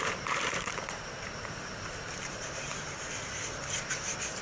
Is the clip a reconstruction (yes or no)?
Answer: yes